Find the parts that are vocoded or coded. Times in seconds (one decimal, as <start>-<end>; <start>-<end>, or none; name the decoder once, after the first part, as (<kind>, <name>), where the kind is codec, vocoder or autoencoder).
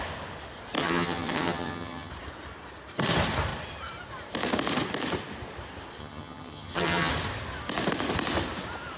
0.8-2.1 (vocoder, HiFi-GAN); 6.0-7.1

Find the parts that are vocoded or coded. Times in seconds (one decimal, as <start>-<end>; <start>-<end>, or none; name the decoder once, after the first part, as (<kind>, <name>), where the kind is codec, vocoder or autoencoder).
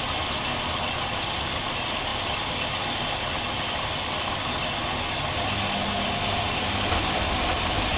none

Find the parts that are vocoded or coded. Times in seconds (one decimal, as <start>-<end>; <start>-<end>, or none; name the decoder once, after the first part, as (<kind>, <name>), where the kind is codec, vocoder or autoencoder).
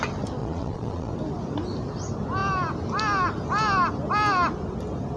0.4-1.1 (vocoder, Vocos)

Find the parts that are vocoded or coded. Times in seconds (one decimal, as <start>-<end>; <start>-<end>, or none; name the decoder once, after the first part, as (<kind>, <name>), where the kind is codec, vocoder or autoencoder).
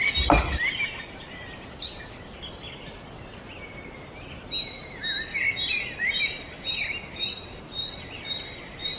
5.4-7.1 (vocoder, BigVGAN v2)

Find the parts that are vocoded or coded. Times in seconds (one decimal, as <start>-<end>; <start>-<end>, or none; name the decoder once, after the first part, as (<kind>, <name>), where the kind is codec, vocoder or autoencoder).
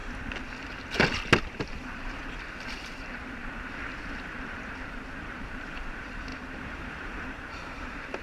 1.4-3.4 (vocoder, BigVGAN v2); 4.0-8.2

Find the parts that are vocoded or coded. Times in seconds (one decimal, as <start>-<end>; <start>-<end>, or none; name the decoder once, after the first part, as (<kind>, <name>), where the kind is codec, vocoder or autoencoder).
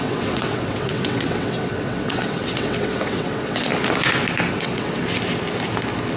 0.0-3.7 (vocoder, WaveNeXt); 4.5-5.0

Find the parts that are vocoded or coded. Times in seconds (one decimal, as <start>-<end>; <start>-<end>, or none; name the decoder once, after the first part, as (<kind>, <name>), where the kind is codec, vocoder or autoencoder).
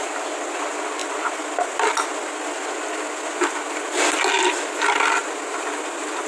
none